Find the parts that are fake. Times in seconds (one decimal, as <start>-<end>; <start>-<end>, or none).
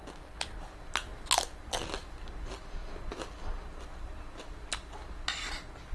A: none